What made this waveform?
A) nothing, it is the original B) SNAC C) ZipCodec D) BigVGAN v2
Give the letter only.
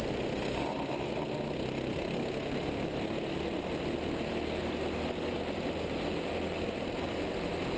A